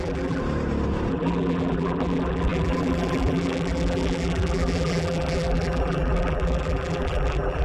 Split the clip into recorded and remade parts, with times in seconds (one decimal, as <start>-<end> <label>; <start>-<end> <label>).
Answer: 0.0-0.4 remade; 0.4-1.1 recorded; 1.1-7.6 remade